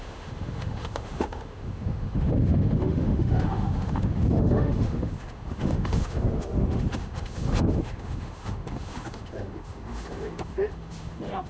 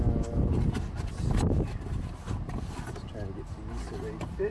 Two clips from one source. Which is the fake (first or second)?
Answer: first